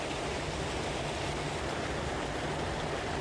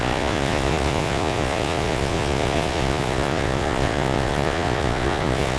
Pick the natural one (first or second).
first